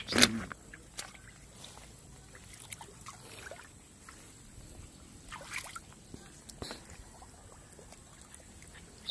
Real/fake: real